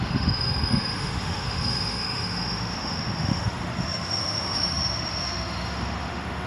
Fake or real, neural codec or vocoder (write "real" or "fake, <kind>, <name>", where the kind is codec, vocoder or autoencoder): fake, autoencoder, DAC-VAE